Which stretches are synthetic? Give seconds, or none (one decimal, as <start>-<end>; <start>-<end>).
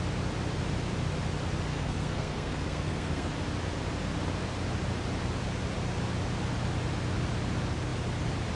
1.7-3.3